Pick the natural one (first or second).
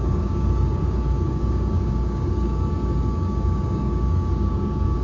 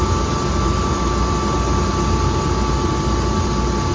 second